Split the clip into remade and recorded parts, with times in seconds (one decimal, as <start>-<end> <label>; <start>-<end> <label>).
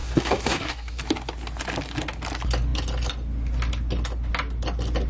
0.0-1.0 remade; 1.0-5.1 recorded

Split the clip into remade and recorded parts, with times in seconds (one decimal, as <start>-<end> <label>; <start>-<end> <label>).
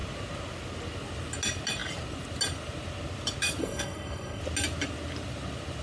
0.0-3.6 recorded; 3.6-4.4 remade; 4.4-5.8 recorded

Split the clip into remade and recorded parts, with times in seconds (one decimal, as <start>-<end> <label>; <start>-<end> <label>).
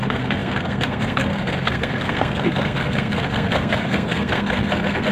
0.0-5.1 remade